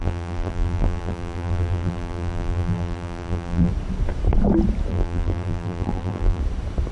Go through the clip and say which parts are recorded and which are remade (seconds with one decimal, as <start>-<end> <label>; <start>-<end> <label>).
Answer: 0.0-3.7 remade; 3.7-4.9 recorded; 4.9-6.4 remade; 6.4-6.9 recorded

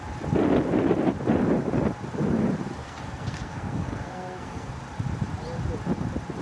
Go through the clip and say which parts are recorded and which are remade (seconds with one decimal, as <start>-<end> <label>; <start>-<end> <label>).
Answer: 0.0-2.8 recorded; 2.8-4.7 remade; 4.7-6.4 recorded

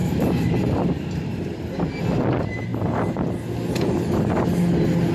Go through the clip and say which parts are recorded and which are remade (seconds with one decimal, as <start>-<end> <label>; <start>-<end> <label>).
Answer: 0.0-1.8 remade; 1.8-2.7 recorded; 2.7-3.3 remade; 3.3-5.1 recorded

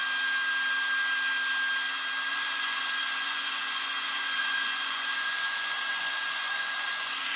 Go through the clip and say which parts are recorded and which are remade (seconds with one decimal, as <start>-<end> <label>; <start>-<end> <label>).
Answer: 0.0-2.3 recorded; 2.3-7.4 remade

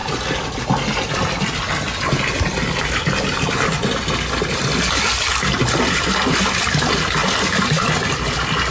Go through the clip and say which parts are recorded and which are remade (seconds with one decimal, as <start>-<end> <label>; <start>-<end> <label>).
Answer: 0.0-8.7 recorded

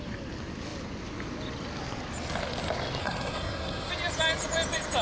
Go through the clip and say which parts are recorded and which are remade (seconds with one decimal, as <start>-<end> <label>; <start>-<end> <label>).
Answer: 0.0-3.0 recorded; 3.0-3.9 remade; 3.9-5.0 recorded

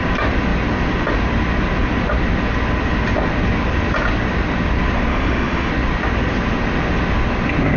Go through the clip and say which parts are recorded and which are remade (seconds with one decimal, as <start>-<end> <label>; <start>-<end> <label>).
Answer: 0.0-5.1 recorded; 5.1-5.7 remade; 5.7-7.8 recorded